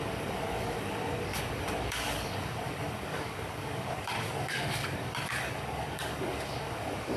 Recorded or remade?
remade